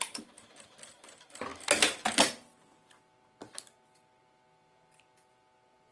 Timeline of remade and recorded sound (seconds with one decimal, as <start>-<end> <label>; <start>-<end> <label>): 0.0-5.9 recorded